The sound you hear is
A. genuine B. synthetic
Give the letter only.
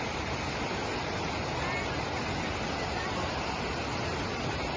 A